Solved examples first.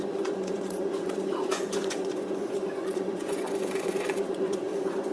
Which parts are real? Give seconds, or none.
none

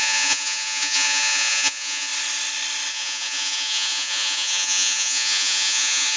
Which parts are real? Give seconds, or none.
2.1-2.9

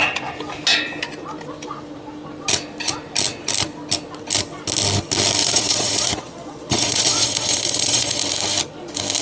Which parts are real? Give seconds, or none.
0.0-5.4; 8.2-9.2

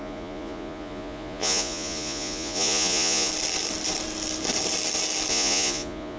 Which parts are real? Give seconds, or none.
3.3-5.3